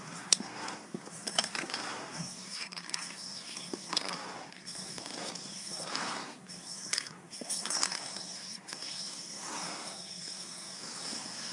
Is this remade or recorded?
remade